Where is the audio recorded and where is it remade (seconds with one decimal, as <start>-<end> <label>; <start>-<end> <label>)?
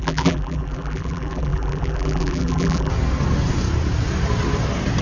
0.0-2.9 remade; 2.9-5.0 recorded